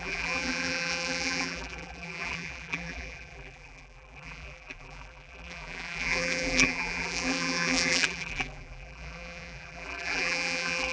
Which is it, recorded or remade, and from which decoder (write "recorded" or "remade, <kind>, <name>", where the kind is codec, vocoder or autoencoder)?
remade, vocoder, BigVGAN v2